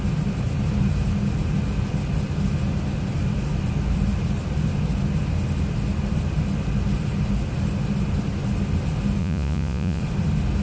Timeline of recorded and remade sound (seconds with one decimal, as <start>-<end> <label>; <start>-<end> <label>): 0.0-9.2 recorded; 9.2-10.0 remade; 10.0-10.6 recorded

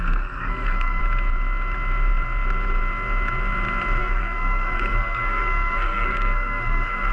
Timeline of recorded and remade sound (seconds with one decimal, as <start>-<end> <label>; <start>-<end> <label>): 0.0-1.0 remade; 1.0-4.0 recorded; 4.0-7.1 remade